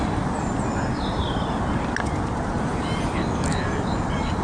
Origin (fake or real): real